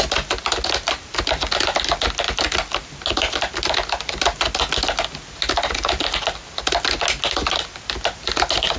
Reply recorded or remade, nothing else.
recorded